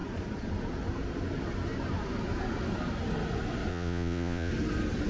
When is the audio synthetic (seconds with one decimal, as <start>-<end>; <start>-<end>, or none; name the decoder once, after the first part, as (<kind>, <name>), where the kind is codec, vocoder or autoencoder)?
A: 3.7-4.5 (vocoder, Vocos)